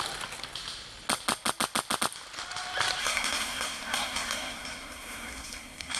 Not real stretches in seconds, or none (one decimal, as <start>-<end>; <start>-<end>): 3.0-6.0